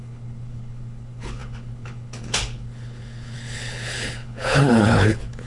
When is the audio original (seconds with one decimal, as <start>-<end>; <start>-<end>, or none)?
none